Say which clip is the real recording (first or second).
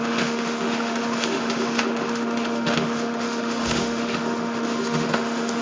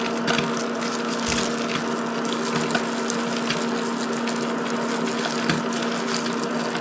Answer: second